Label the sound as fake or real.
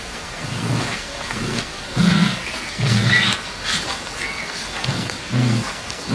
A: fake